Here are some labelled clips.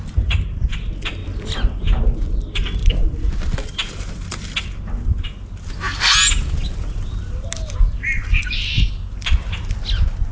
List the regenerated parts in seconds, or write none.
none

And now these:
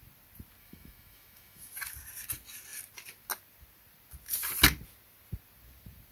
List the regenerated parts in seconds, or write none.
0.6-1.7 (autoencoder, DAC-VAE)

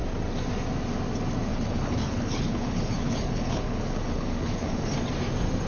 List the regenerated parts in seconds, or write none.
1.5-4.9 (codec, HILCodec)